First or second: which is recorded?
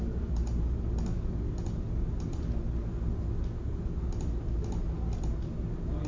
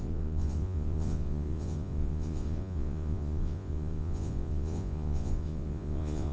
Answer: first